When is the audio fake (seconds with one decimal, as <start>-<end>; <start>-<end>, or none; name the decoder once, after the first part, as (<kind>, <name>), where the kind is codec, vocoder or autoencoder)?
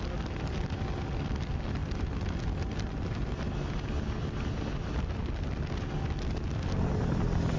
none